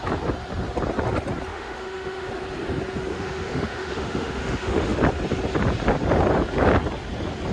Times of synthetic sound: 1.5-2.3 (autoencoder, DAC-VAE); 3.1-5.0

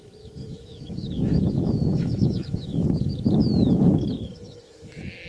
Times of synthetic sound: 0.0-5.3 (autoencoder, DAC-VAE)

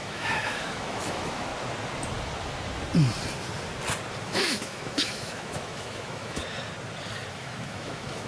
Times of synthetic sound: 0.0-1.5 (autoencoder, DAC-VAE); 4.2-6.4; 7.3-8.3